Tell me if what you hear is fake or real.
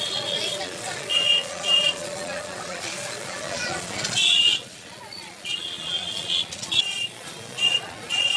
fake